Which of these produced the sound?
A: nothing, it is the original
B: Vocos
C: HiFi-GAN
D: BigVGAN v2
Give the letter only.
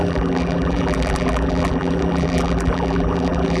D